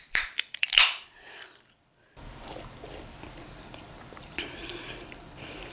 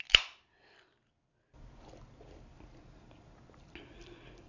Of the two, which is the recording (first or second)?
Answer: second